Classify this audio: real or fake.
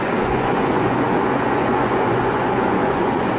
fake